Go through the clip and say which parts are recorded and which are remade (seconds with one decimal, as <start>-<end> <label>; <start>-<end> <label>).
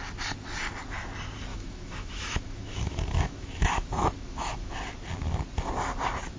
0.0-1.5 recorded; 1.5-4.7 remade; 4.7-6.4 recorded